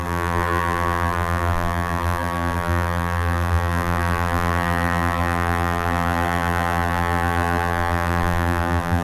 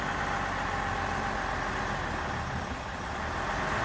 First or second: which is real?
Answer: second